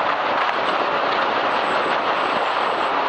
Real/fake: real